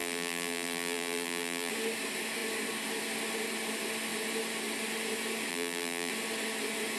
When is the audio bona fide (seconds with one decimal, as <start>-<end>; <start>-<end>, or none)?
1.7-5.5; 6.1-7.0

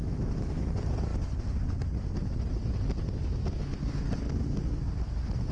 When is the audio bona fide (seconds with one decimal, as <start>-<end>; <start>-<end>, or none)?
0.7-5.5

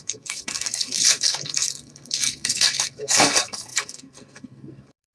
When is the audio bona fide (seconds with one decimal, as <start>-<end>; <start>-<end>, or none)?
none

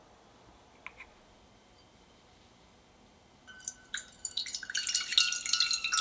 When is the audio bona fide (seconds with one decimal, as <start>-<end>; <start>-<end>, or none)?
0.0-3.6; 5.1-6.0

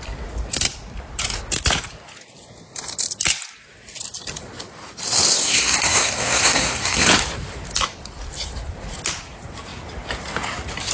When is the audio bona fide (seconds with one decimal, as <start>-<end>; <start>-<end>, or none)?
0.0-5.4; 7.1-10.9

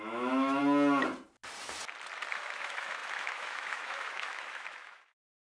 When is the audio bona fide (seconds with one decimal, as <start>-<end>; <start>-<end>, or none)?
0.6-2.3